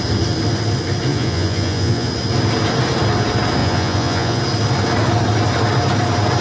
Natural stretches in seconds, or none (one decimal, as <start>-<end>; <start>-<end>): 0.0-1.1; 2.1-3.6; 4.4-6.4